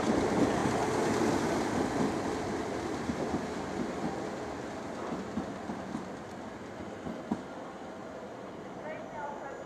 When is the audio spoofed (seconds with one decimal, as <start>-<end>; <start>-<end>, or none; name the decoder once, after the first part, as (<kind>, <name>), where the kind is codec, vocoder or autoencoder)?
none